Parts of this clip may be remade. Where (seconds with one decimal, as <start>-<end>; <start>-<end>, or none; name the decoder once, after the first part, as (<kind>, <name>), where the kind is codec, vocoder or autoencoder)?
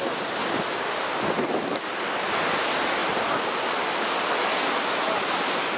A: none